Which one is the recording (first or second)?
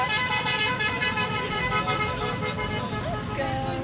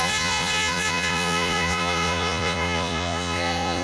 first